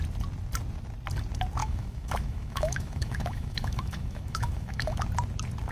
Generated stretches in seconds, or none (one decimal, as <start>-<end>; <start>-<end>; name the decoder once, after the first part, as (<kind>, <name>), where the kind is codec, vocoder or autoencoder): 1.6-5.0 (autoencoder, DAC-VAE)